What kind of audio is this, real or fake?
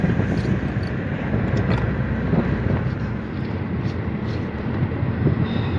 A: fake